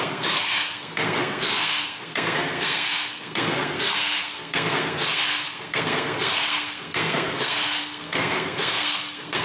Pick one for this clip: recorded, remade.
remade